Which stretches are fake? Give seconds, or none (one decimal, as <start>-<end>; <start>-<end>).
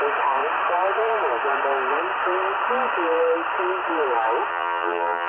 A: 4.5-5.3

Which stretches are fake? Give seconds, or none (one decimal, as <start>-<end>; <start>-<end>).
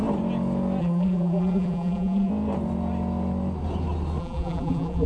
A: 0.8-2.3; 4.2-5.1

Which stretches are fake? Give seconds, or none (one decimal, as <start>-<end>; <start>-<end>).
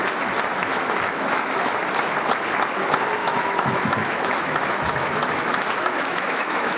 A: 0.5-1.7; 3.2-6.8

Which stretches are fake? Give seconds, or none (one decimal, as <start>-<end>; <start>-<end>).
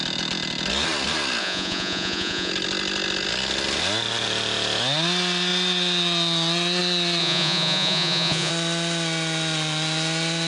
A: 1.4-2.5; 7.2-8.5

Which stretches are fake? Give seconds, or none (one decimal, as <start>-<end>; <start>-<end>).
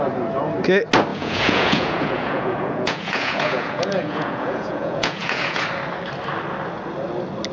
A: 1.1-5.6